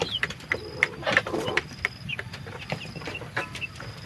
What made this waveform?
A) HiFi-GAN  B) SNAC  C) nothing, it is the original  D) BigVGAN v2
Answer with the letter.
D